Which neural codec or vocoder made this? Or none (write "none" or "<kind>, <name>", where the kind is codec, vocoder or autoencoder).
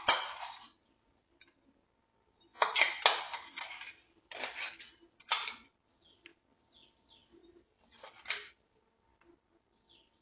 none